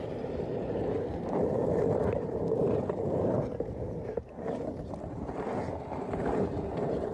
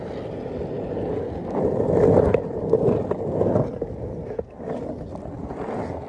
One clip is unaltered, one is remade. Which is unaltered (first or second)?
second